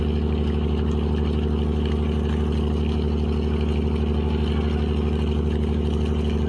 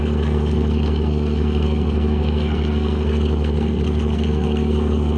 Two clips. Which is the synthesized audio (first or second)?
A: second